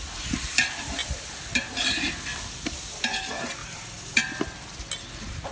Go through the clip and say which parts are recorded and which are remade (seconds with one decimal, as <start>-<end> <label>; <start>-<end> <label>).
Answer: 0.0-3.6 recorded; 3.6-4.2 remade; 4.2-5.5 recorded